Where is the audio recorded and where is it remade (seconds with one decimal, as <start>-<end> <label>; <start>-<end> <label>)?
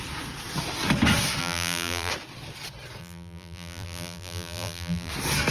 0.0-1.4 recorded; 1.4-2.1 remade; 2.1-3.0 recorded; 3.0-5.1 remade; 5.1-5.5 recorded